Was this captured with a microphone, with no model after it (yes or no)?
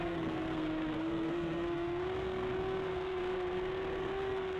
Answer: no